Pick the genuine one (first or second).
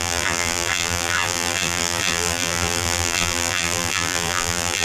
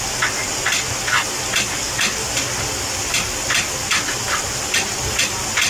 second